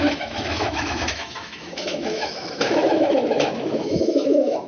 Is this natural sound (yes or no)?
no